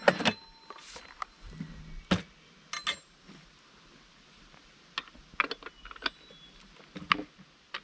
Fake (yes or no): no